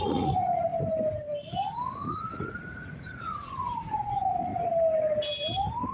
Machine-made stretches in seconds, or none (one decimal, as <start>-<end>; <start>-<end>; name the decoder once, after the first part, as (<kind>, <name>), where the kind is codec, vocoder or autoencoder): 0.0-0.7 (vocoder, Vocos); 2.1-4.5